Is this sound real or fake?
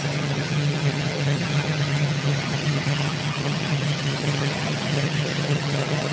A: fake